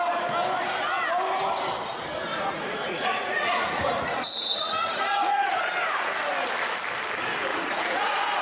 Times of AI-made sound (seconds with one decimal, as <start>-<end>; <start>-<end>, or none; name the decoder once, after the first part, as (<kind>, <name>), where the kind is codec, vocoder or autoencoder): 2.3-5.6 (vocoder, Vocos); 7.5-8.4